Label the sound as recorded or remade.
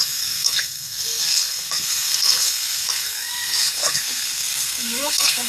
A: remade